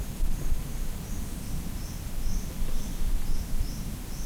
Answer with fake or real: fake